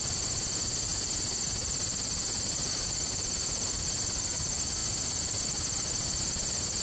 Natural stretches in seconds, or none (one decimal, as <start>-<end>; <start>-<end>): none